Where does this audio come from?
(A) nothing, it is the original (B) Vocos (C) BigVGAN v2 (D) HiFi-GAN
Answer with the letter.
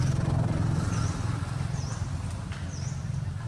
A